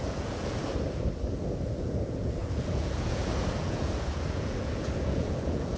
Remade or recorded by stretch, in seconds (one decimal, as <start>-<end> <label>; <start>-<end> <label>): 0.0-0.7 remade; 0.7-1.8 recorded; 1.8-5.8 remade